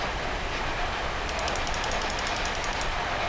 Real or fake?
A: real